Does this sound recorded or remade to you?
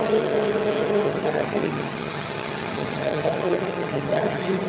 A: remade